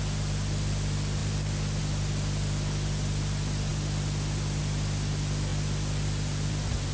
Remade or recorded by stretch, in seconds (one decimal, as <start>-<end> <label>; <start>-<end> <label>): 0.0-6.9 recorded